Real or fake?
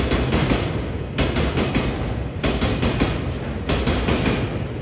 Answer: real